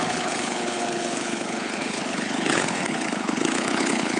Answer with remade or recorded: remade